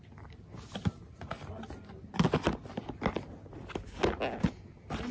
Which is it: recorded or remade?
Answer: recorded